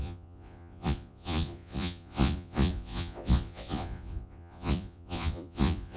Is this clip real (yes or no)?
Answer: no